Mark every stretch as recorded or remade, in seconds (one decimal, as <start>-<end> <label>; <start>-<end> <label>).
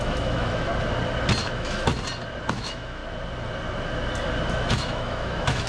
0.0-0.7 remade; 0.7-1.4 recorded; 1.4-1.9 remade; 1.9-2.5 recorded; 2.5-3.0 remade; 3.0-4.5 recorded; 4.5-5.7 remade